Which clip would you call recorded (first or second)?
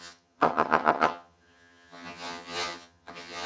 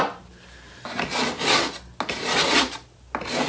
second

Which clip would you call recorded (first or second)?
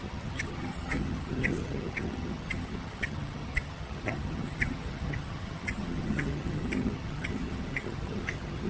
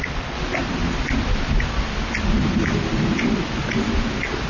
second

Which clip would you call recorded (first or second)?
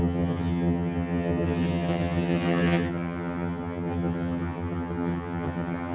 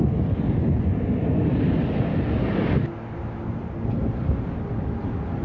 second